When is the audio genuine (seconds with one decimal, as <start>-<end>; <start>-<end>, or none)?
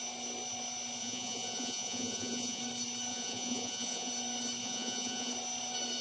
0.0-1.0; 2.6-3.1; 4.1-4.6; 5.3-6.0